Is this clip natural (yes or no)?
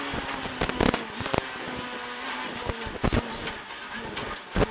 yes